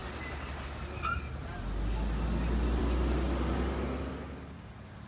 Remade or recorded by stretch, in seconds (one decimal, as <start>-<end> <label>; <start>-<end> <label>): 0.0-5.1 recorded